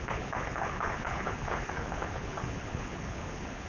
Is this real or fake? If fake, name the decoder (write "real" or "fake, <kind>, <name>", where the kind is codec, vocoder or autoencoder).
fake, codec, HILCodec